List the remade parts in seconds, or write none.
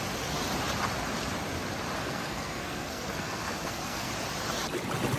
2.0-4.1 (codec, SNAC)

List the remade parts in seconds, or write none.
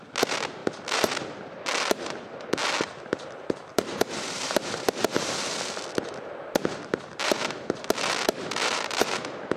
3.7-5.5 (vocoder, BigVGAN v2)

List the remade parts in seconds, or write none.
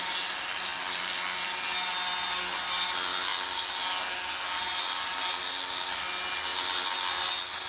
none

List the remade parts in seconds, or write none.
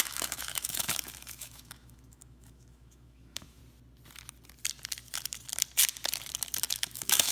0.0-3.6 (autoencoder, DAC-VAE); 6.7-7.3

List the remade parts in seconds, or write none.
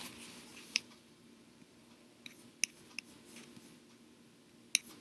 0.5-1.8 (vocoder, BigVGAN v2)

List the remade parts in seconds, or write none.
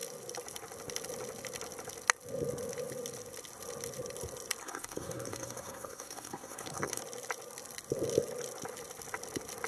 4.6-7.0 (codec, SNAC)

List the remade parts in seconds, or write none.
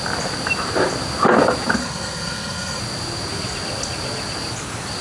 1.8-2.8 (codec, SNAC)